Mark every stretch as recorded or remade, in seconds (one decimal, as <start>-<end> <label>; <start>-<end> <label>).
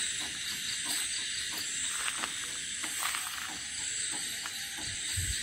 0.0-5.4 recorded